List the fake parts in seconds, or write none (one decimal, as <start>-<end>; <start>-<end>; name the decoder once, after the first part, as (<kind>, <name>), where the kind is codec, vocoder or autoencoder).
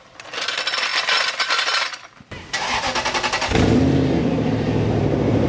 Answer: none